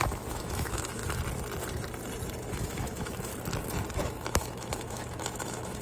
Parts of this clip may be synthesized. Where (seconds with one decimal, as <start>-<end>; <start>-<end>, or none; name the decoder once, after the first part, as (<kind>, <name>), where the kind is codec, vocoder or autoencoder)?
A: 0.0-1.0 (autoencoder, DAC-VAE); 2.5-3.3; 3.9-5.8